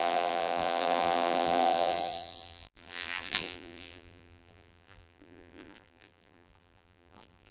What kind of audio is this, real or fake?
fake